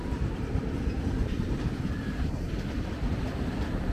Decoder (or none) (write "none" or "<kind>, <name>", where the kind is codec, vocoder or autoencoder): vocoder, BigVGAN v2